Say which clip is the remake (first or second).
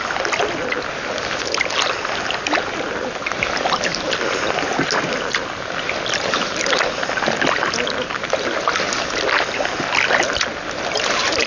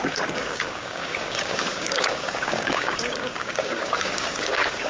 second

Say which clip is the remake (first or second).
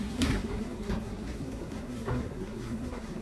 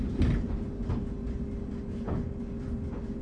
first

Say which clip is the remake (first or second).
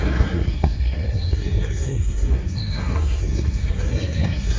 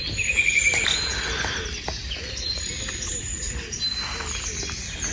first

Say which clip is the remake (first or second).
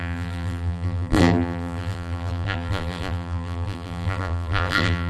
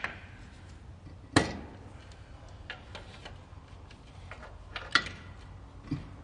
first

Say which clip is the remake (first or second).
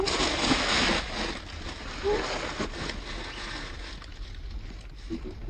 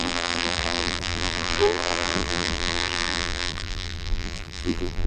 second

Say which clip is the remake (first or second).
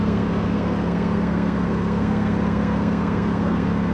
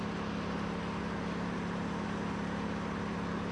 first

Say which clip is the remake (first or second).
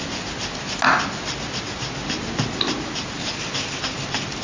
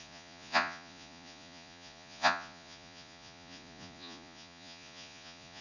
second